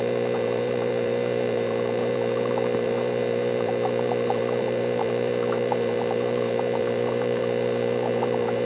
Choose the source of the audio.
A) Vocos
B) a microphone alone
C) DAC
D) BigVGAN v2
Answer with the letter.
D